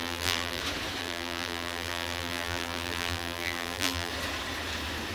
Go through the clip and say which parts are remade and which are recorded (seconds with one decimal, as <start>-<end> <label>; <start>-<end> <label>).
0.0-0.6 remade; 0.6-1.0 recorded; 1.0-4.1 remade; 4.1-5.1 recorded